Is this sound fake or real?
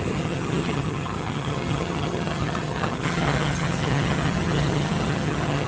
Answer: fake